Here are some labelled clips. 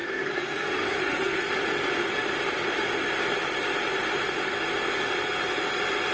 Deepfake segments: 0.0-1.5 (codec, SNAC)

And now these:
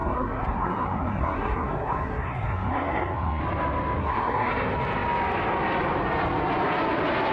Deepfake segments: 0.0-3.4 (codec, SNAC); 4.0-4.5